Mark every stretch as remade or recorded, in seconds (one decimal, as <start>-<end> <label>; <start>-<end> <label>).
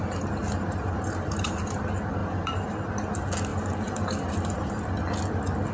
0.0-0.4 recorded; 0.4-1.8 remade; 1.8-2.2 recorded; 2.2-2.7 remade; 2.7-3.5 recorded; 3.5-4.7 remade; 4.7-5.7 recorded